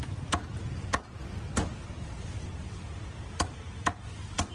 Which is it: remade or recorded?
recorded